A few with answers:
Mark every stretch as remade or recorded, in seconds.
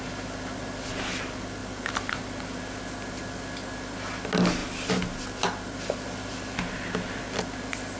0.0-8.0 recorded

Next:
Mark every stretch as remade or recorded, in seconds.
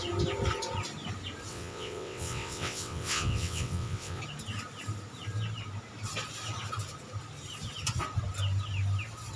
0.0-1.5 recorded; 1.5-4.2 remade; 4.2-9.4 recorded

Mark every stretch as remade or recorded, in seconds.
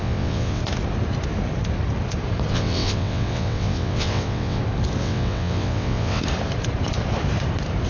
0.0-0.6 remade; 0.6-2.5 recorded; 2.5-4.6 remade; 4.6-5.0 recorded; 5.0-6.2 remade; 6.2-7.9 recorded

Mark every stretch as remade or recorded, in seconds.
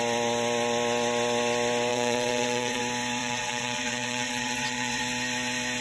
0.0-1.9 recorded; 1.9-2.8 remade; 2.8-3.2 recorded; 3.2-5.0 remade; 5.0-5.8 recorded